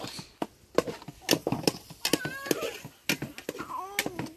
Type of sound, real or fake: real